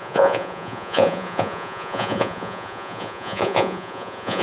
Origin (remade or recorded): remade